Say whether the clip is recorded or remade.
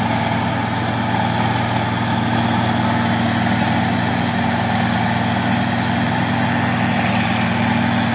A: recorded